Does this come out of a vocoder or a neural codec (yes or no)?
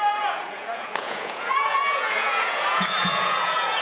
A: yes